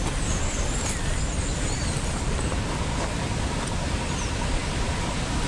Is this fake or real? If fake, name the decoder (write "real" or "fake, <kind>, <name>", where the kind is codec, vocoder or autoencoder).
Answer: real